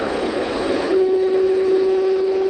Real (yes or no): no